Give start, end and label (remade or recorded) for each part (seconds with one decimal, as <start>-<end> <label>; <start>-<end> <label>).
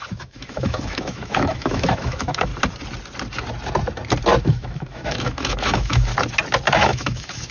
0.0-2.5 remade; 2.5-4.4 recorded; 4.4-6.1 remade; 6.1-6.7 recorded; 6.7-7.5 remade